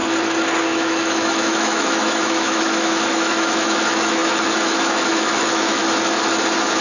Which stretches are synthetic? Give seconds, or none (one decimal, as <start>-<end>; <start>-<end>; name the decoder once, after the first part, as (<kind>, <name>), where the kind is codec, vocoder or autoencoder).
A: 0.6-5.8 (autoencoder, DAC-VAE)